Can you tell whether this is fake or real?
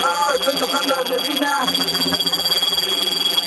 fake